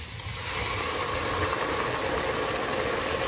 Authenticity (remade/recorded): recorded